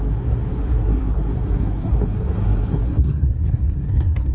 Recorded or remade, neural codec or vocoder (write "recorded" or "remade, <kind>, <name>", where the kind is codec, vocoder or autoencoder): remade, codec, SNAC